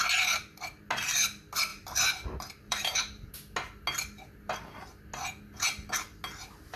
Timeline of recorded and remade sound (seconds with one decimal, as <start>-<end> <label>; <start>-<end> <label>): 0.0-1.7 recorded; 1.7-3.3 remade; 3.3-6.8 recorded